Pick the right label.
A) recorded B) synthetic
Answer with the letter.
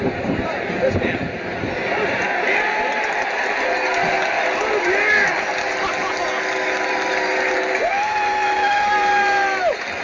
A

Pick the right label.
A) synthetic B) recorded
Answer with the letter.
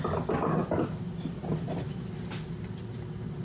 B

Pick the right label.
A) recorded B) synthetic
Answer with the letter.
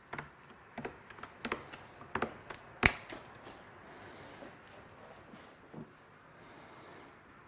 A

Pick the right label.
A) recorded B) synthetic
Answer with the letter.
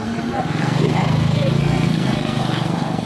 B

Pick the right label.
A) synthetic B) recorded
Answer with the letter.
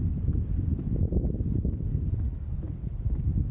B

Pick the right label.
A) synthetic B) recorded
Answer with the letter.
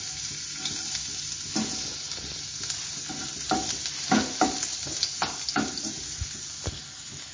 B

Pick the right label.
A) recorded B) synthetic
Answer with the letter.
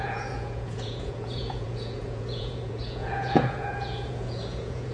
B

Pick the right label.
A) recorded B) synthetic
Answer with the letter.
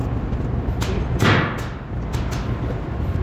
A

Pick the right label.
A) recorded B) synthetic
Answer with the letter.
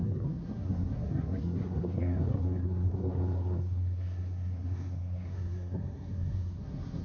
B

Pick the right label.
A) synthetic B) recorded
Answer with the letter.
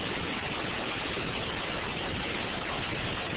B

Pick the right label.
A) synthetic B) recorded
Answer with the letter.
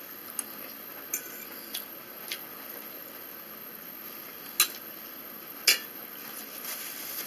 B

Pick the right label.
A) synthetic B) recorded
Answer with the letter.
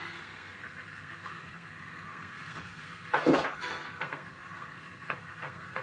A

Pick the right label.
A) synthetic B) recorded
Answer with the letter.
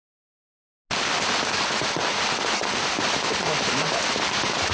B